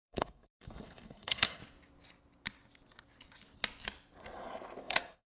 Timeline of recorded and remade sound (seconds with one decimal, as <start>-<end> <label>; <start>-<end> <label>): 0.0-1.6 remade; 1.6-4.8 recorded; 4.8-5.3 remade